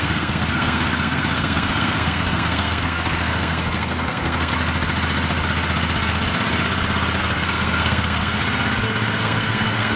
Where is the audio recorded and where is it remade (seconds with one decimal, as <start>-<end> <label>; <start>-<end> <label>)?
0.0-4.5 remade; 4.5-7.2 recorded; 7.2-8.4 remade; 8.4-9.2 recorded; 9.2-10.0 remade